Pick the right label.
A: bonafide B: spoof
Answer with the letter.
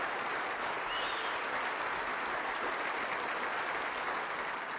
A